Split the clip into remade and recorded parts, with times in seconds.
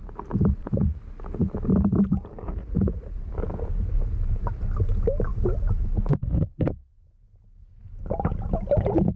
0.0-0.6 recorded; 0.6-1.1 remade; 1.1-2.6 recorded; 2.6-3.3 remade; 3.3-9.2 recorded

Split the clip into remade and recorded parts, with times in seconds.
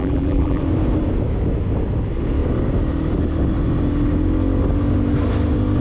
0.0-0.6 remade; 0.6-5.8 recorded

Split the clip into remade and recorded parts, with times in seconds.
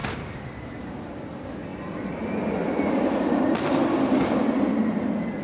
0.0-5.4 recorded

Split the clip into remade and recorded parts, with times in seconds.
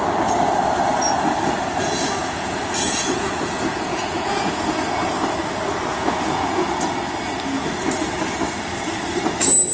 0.0-2.2 recorded; 2.2-4.6 remade; 4.6-5.9 recorded; 5.9-6.6 remade; 6.6-9.7 recorded